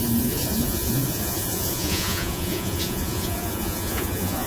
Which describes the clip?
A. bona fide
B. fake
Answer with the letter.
B